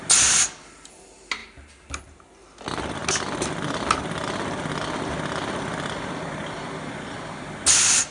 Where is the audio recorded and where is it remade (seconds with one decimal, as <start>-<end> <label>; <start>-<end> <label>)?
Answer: 0.0-8.1 recorded